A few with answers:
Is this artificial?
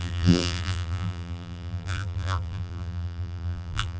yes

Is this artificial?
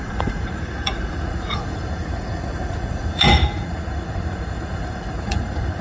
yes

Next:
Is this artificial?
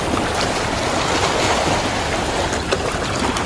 no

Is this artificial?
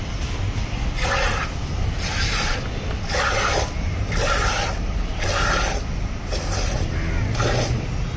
no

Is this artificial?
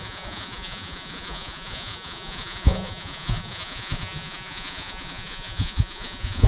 yes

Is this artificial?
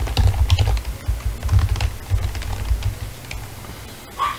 no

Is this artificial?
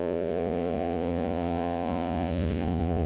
yes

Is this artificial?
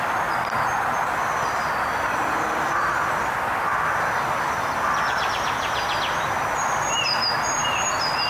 no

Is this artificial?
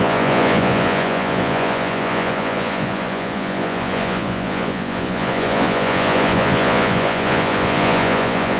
yes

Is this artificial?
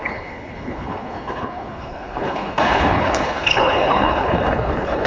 yes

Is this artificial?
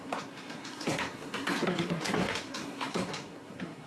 yes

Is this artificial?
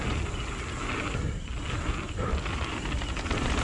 no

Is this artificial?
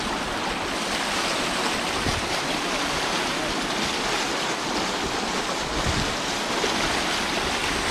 no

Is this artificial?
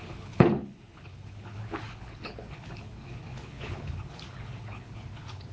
yes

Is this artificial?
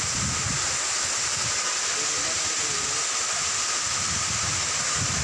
no